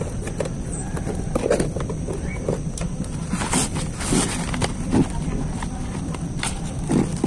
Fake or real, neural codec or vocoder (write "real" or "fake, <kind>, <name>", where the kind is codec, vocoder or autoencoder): real